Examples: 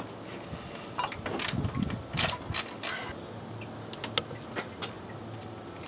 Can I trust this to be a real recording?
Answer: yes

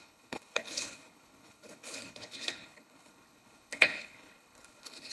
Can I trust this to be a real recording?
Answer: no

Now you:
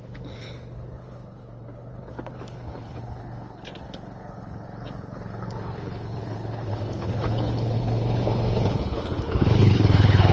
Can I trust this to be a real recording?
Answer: no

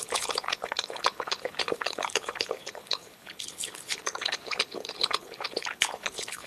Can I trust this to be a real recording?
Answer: no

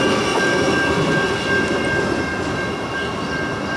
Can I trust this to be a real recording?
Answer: yes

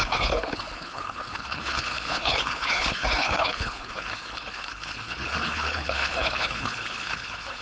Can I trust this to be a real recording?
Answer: no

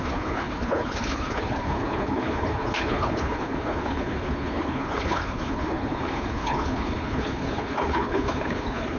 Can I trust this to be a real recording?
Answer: no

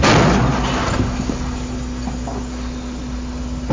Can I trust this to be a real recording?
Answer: yes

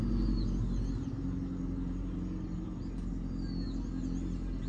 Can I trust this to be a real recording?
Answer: yes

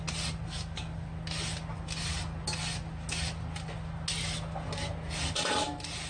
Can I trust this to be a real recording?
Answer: yes